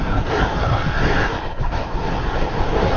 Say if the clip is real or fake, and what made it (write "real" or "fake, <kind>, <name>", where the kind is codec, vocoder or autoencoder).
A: fake, codec, SNAC